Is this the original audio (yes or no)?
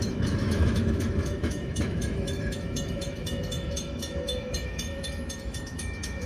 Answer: no